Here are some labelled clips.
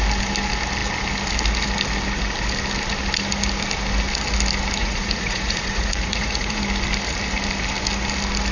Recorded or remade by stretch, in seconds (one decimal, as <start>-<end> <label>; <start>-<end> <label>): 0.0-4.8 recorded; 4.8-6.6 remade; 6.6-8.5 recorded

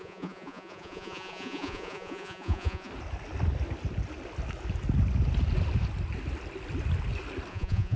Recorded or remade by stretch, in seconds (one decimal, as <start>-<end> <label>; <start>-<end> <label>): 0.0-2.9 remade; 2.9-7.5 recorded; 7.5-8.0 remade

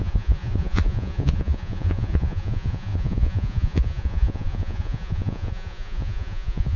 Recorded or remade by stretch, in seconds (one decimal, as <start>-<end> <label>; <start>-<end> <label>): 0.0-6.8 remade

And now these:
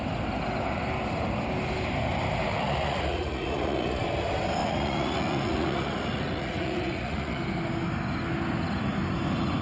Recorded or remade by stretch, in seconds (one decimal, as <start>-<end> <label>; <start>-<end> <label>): 0.0-2.5 recorded; 2.5-4.0 remade; 4.0-4.6 recorded; 4.6-7.4 remade; 7.4-9.6 recorded

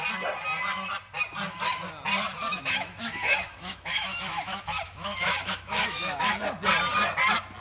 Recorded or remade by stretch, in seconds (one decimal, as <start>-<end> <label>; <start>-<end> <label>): 0.0-2.5 recorded; 2.5-6.4 remade; 6.4-7.6 recorded

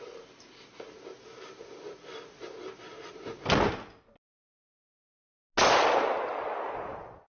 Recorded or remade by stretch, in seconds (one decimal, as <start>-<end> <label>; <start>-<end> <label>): 0.0-7.4 recorded

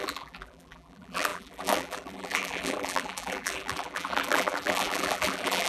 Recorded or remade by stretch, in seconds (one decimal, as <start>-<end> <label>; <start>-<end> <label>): 0.0-5.7 remade

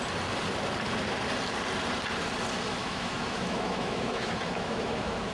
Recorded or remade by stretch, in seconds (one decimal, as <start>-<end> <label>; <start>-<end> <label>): 0.0-2.8 recorded; 2.8-5.3 remade